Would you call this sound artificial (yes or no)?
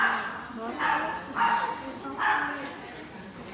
no